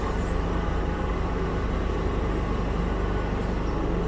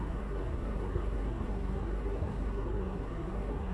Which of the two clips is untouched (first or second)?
first